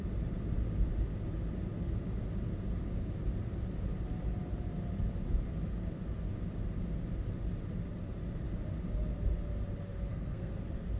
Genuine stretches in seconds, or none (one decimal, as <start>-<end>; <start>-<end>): 0.0-10.1; 10.6-11.0